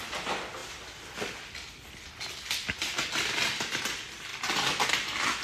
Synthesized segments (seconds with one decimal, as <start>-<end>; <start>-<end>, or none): none